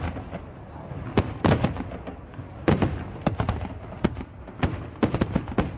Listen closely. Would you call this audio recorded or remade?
recorded